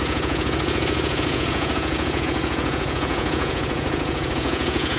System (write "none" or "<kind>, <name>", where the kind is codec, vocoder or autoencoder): vocoder, Vocos